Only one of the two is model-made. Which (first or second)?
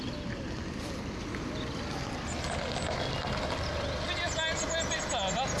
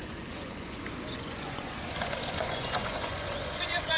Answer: second